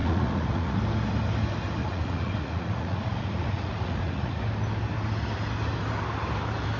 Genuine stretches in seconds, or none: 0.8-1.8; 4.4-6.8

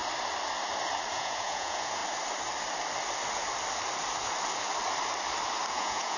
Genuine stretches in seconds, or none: 0.0-1.1; 2.0-5.7

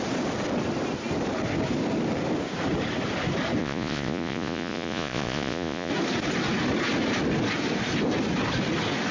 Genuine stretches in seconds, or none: 0.0-3.6; 5.9-9.1

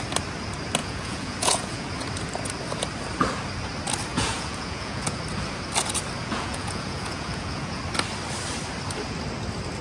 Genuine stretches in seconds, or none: 0.0-0.8; 1.9-4.1; 5.2-6.2; 7.8-9.8